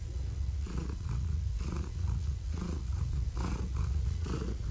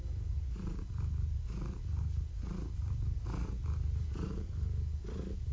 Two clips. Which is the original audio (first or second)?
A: second